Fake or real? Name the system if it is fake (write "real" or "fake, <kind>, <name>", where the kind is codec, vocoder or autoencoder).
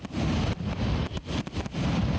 real